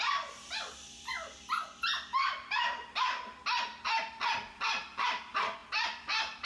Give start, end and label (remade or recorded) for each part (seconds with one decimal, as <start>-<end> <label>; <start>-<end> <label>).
0.0-6.5 recorded